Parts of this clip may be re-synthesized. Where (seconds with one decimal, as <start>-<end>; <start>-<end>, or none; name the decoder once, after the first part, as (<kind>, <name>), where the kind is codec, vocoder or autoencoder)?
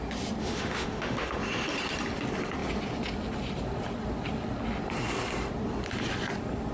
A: 0.4-1.4 (autoencoder, DAC-VAE)